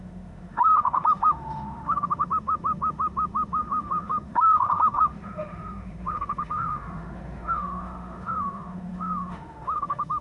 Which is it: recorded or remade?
remade